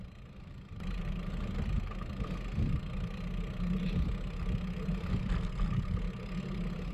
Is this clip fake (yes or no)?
no